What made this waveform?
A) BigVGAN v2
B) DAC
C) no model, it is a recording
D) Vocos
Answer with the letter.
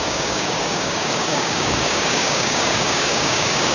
B